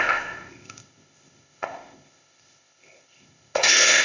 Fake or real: fake